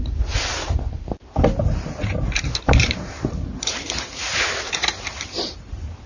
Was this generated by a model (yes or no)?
yes